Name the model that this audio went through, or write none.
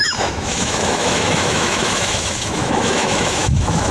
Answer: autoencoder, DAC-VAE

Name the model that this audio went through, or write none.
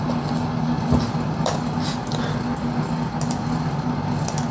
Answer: none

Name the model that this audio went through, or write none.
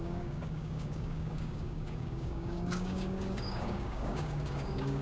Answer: codec, DAC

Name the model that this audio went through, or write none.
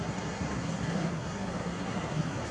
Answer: codec, SNAC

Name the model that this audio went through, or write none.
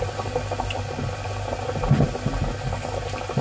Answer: none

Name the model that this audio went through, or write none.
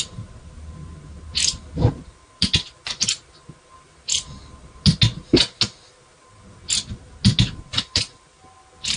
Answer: none